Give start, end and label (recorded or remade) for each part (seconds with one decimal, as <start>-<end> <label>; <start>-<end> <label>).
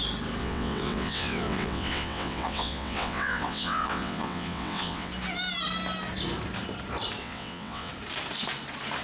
0.0-0.4 recorded; 0.4-5.1 remade; 5.1-7.2 recorded; 7.2-7.9 remade; 7.9-9.0 recorded